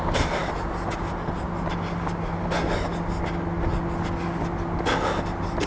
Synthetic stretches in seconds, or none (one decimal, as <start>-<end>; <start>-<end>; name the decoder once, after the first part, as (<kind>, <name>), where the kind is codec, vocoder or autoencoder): none